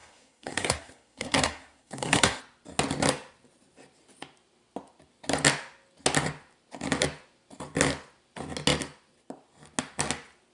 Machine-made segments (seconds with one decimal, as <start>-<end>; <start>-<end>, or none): 0.0-2.4